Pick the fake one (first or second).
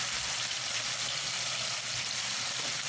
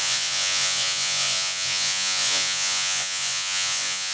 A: second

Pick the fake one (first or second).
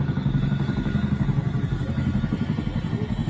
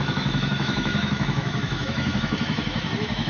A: second